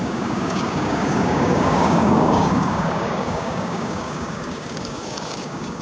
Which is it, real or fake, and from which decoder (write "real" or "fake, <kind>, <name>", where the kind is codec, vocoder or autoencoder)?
fake, codec, DAC